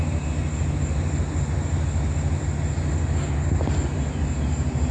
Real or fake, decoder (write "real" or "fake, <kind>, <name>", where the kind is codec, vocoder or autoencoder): real